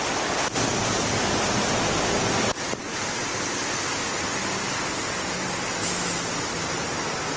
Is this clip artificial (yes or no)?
no